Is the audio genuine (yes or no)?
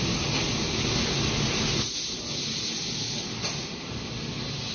yes